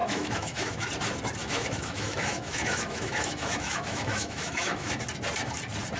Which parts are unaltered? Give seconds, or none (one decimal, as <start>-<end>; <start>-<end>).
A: 0.9-1.4; 5.0-6.0